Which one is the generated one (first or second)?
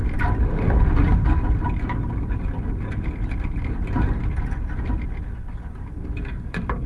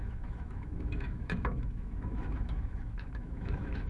second